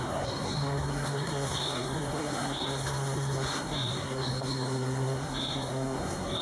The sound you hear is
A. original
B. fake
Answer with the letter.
B